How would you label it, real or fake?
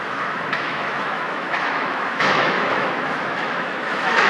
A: fake